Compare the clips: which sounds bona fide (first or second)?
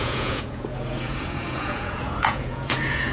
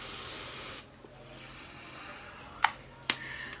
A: second